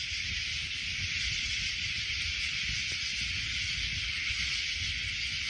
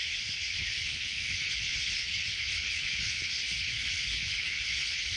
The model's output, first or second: second